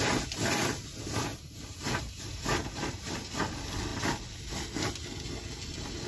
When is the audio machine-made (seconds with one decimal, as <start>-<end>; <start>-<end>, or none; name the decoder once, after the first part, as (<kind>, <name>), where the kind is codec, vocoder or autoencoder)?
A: 1.3-3.0 (vocoder, BigVGAN v2)